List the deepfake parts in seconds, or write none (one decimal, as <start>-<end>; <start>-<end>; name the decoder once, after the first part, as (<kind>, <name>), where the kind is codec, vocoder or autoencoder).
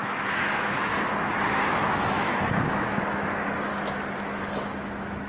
0.0-0.9 (autoencoder, DAC-VAE); 1.7-3.7; 4.4-5.3